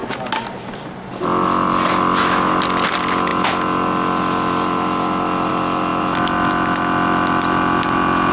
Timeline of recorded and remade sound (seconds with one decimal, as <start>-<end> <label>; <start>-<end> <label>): 0.0-8.3 recorded